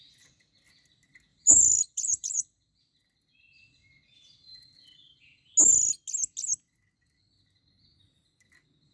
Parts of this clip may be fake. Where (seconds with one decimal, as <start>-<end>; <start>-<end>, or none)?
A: 1.3-2.8